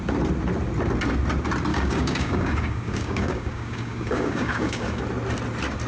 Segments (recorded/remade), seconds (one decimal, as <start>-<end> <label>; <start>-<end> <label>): 0.0-1.7 recorded; 1.7-5.0 remade; 5.0-5.9 recorded